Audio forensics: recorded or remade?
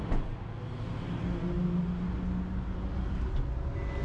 recorded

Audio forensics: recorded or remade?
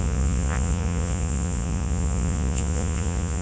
remade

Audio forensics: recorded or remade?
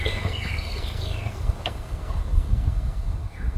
remade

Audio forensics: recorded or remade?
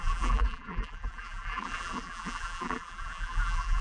remade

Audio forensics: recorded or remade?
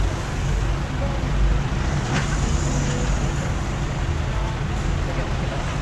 recorded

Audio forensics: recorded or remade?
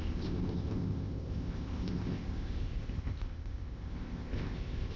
remade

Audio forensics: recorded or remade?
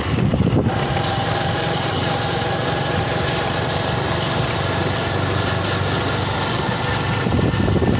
recorded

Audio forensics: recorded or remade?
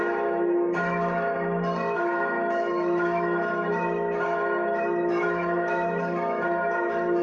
remade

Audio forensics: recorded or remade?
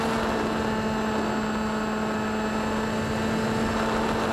recorded